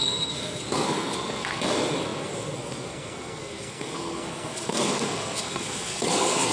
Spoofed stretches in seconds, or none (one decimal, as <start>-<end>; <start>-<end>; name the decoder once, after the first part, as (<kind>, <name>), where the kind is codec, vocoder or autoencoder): 0.0-6.5 (codec, SNAC)